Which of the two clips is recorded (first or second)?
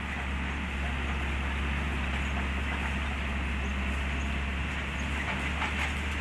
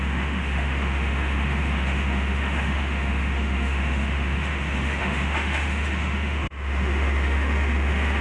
first